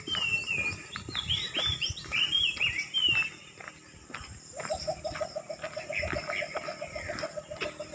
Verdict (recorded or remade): recorded